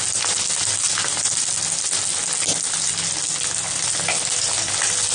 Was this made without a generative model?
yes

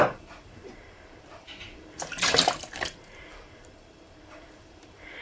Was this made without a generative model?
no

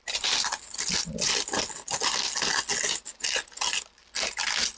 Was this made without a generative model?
yes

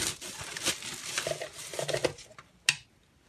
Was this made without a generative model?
yes